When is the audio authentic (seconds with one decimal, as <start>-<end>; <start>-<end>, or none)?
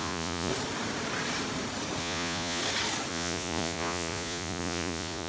0.5-2.0; 2.6-3.1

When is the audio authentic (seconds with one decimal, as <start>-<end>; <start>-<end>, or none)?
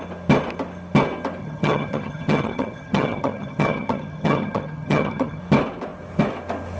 0.0-1.4; 5.4-6.8